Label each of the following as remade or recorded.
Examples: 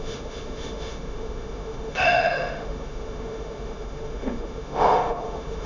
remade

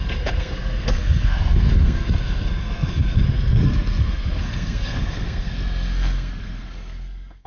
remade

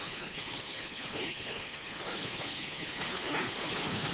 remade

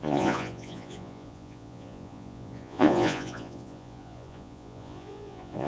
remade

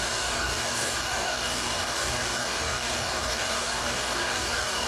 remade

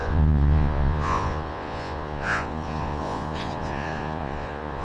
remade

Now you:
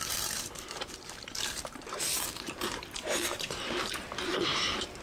remade